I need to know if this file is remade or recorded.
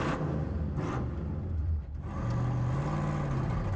recorded